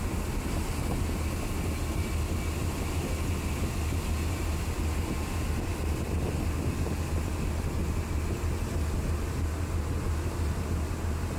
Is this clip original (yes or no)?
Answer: yes